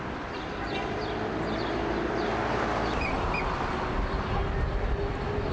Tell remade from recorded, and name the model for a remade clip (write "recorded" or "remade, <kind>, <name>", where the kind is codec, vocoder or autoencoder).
recorded